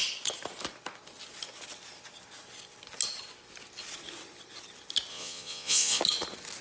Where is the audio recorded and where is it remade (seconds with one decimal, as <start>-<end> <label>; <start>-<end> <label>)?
0.0-5.1 recorded; 5.1-6.0 remade; 6.0-6.6 recorded